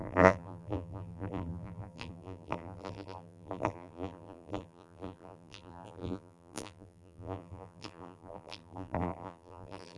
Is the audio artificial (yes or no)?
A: yes